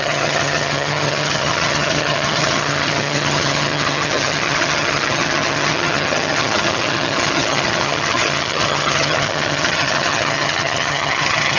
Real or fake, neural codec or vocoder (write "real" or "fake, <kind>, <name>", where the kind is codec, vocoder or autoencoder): fake, vocoder, HiFi-GAN